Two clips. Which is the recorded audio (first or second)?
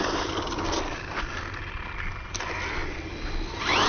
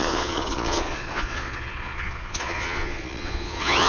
first